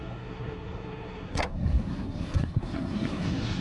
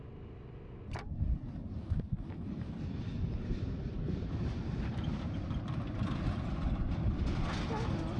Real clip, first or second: second